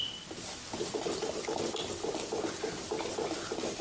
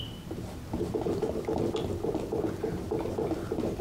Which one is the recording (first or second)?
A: second